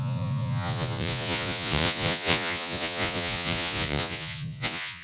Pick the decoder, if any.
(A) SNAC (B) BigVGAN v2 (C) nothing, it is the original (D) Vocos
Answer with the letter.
D